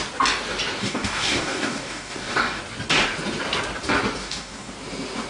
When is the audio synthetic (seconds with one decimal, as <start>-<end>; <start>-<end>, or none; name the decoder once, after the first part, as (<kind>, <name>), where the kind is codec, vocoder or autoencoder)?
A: 0.8-2.6 (codec, DAC); 4.2-4.7